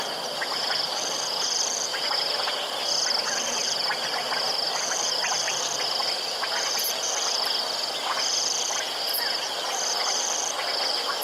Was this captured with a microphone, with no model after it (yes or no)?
yes